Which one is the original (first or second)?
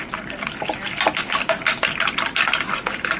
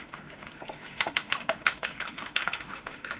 first